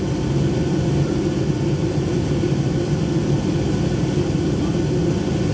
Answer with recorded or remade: recorded